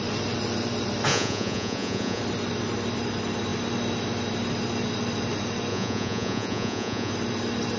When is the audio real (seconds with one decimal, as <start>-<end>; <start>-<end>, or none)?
0.0-1.1; 2.2-5.7; 7.1-7.8